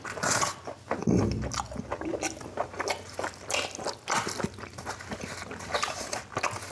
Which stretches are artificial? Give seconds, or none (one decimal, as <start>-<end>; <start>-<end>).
none